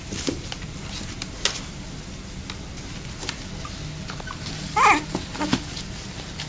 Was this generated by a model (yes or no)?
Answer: no